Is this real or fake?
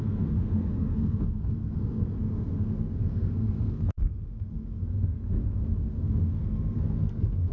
fake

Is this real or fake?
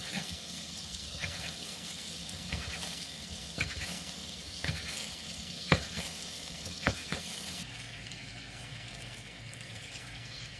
fake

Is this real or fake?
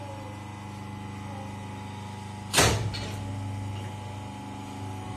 real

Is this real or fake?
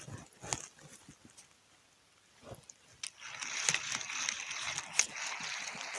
real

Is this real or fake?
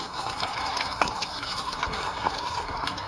fake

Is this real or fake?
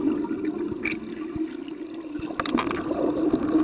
real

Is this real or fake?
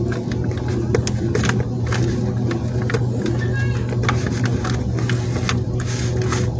real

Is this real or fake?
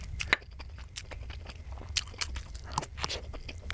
real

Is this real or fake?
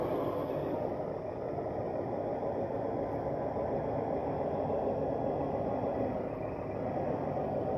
real